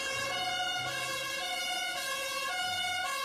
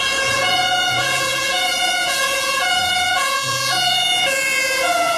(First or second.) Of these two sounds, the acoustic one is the first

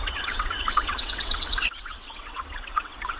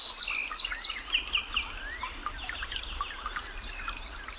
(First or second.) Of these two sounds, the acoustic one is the second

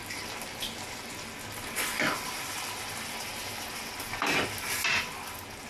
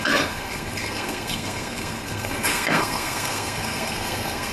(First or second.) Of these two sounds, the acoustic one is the first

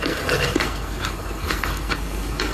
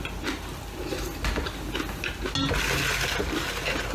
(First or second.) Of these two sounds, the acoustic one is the second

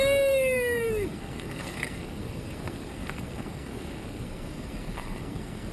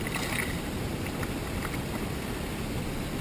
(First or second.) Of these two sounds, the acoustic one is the second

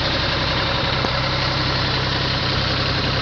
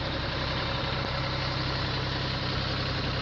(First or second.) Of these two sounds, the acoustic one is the second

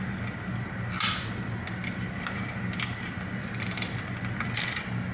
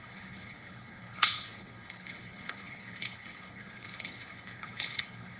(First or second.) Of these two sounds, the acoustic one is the first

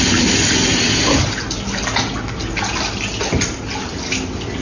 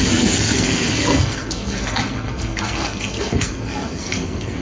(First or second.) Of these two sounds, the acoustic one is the first